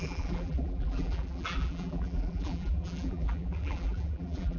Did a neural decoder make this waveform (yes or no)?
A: yes